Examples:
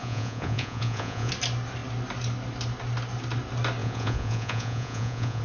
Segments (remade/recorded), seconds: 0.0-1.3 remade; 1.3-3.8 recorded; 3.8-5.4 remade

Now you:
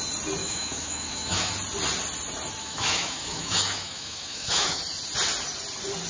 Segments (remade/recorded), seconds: 0.0-0.4 recorded; 0.4-1.5 remade; 1.5-2.6 recorded; 2.6-4.8 remade; 4.8-6.1 recorded

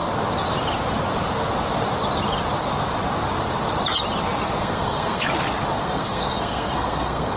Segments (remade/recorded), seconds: 0.0-4.6 recorded; 4.6-5.2 remade; 5.2-5.7 recorded; 5.7-7.4 remade